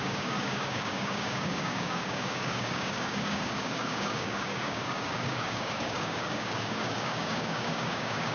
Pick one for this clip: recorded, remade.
remade